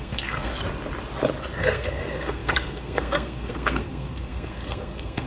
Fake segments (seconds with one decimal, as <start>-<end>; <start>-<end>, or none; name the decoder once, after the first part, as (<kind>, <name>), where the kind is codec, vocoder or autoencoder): 0.0-0.5 (codec, SNAC); 1.6-5.3